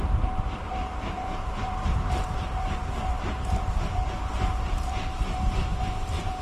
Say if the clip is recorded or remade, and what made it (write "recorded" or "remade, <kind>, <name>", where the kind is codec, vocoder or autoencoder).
remade, vocoder, BigVGAN v2